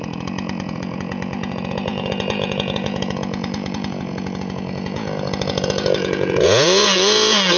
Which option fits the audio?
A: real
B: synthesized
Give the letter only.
B